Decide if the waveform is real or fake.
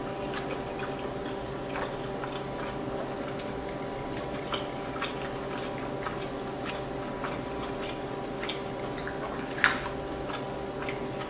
real